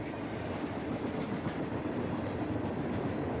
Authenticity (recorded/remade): recorded